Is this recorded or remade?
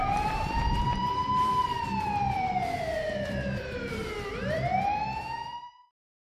remade